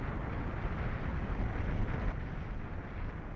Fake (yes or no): no